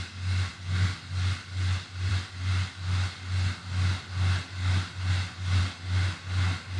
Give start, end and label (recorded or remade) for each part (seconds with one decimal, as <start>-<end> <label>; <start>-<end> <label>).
0.0-6.8 recorded